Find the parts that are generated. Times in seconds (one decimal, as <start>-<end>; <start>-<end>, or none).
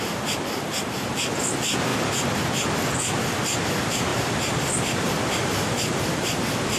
4.1-4.7